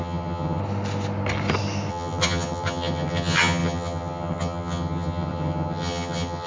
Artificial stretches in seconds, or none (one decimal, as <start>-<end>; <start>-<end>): 0.0-0.6; 1.9-6.5